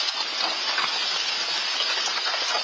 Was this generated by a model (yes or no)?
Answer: no